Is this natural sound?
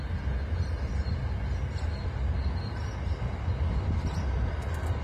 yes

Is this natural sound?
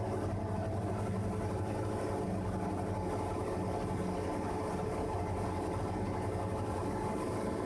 yes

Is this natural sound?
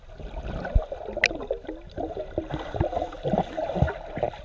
yes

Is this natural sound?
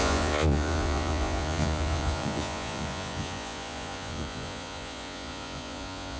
no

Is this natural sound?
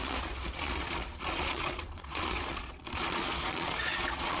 no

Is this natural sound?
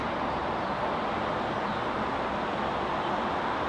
yes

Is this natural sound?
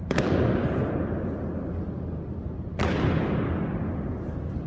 yes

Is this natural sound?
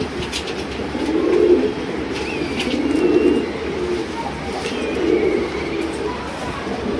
yes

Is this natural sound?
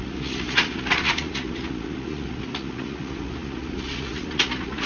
no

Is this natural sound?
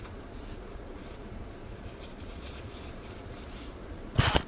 no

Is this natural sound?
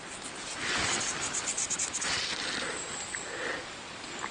yes